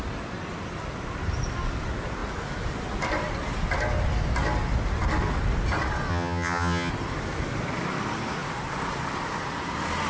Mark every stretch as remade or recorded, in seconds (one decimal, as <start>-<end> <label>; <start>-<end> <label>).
0.0-6.1 recorded; 6.1-6.9 remade; 6.9-10.1 recorded